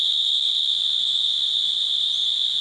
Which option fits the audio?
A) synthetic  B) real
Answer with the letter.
B